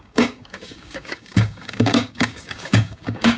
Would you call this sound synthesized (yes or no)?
yes